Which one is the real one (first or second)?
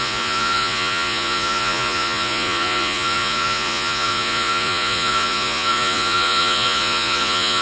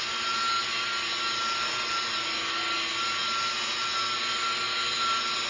second